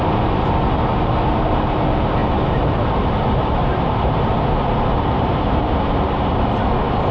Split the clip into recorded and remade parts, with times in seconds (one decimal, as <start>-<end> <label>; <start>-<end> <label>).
0.0-2.2 recorded; 2.2-6.5 remade; 6.5-7.1 recorded